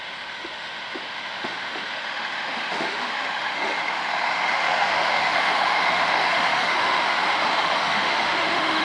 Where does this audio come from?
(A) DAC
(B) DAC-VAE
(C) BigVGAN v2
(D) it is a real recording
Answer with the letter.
B